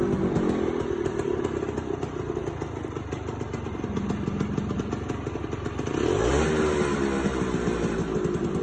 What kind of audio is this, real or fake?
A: real